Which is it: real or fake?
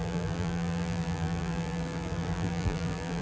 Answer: fake